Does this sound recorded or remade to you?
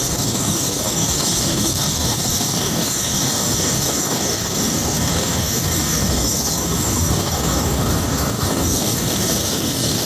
remade